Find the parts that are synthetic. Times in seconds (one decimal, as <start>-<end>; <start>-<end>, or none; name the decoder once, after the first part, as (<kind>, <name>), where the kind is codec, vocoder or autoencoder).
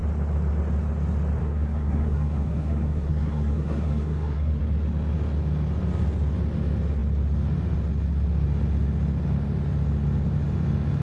1.4-4.6 (codec, SNAC)